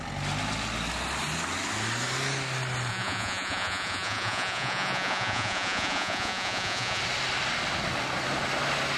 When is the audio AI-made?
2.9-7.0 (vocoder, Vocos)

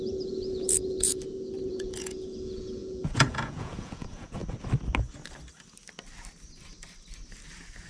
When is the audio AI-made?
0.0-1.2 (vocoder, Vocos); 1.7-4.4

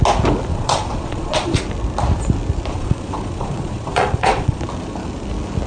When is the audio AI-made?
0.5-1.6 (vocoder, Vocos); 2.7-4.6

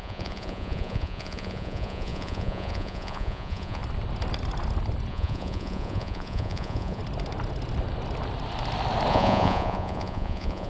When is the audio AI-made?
0.0-3.8 (vocoder, Vocos); 5.1-7.0; 9.1-10.7

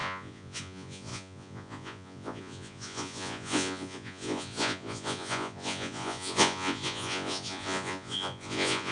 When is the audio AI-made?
0.0-8.9 (vocoder, Vocos)